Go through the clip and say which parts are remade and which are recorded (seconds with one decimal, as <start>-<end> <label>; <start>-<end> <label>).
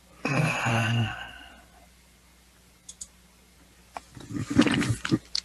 0.0-0.7 recorded; 0.7-1.5 remade; 1.5-5.4 recorded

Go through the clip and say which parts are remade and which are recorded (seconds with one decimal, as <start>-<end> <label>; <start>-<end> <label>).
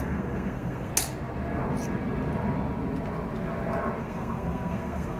0.0-0.9 remade; 0.9-4.0 recorded; 4.0-5.2 remade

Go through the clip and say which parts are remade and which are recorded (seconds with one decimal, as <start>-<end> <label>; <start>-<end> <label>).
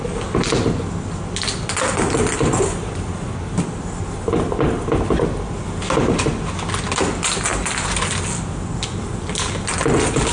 0.0-10.3 recorded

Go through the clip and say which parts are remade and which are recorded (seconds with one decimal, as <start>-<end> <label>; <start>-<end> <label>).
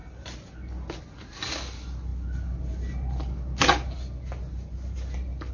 0.0-5.5 recorded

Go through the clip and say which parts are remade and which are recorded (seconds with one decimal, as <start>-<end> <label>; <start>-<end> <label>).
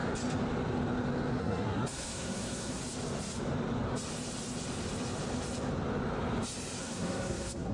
0.0-1.3 recorded; 1.3-2.8 remade; 2.8-6.8 recorded; 6.8-7.7 remade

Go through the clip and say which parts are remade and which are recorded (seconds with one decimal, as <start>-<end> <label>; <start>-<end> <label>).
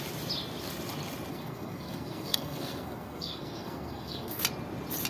0.0-1.3 recorded; 1.3-4.4 remade; 4.4-5.1 recorded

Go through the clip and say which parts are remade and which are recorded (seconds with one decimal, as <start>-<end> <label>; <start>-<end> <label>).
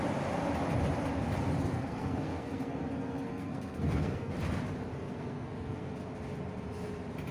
0.0-1.7 recorded; 1.7-4.3 remade; 4.3-4.9 recorded; 4.9-5.9 remade; 5.9-7.3 recorded